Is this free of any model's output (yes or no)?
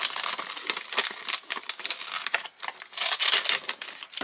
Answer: yes